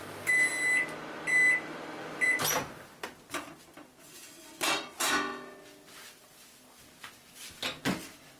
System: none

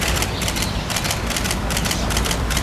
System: vocoder, BigVGAN v2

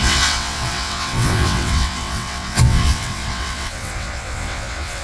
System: vocoder, WaveNeXt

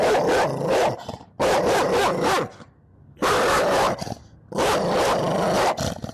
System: none